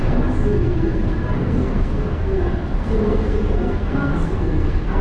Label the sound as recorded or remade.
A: remade